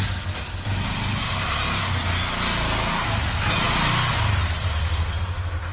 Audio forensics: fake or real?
real